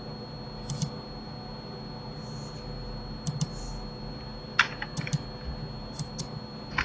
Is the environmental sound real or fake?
real